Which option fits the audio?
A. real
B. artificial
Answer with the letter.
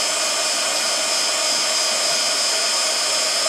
A